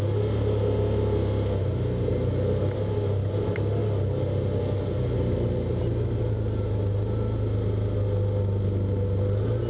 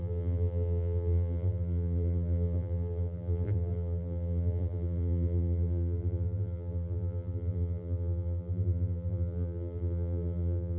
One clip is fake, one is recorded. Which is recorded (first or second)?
first